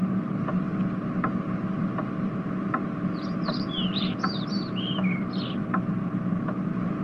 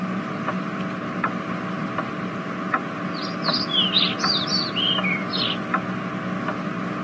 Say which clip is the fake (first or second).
first